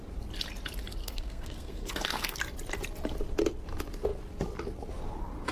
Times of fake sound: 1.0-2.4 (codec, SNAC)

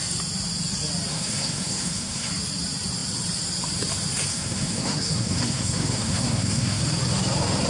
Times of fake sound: 1.1-2.3 (codec, SNAC); 4.3-6.8

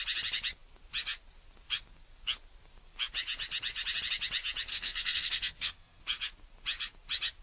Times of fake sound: 4.7-6.0 (codec, SNAC)

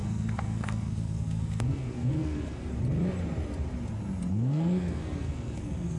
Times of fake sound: 0.0-2.7 (codec, SNAC); 4.3-6.0

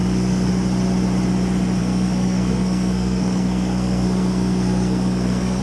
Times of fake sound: 0.0-0.5 (codec, SNAC); 1.8-5.6

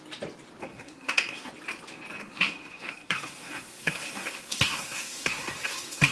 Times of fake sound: 0.7-1.5 (codec, SNAC); 2.2-6.1

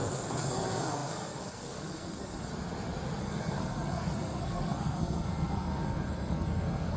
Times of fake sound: 0.0-2.5 (codec, SNAC); 3.2-7.0

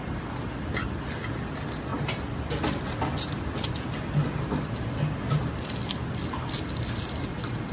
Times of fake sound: none